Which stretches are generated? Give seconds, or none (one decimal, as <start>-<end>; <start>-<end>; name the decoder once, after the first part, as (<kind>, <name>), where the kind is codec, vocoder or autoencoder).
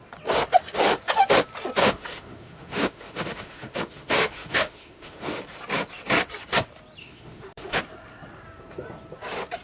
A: 1.8-5.4 (autoencoder, DAC-VAE); 7.0-7.8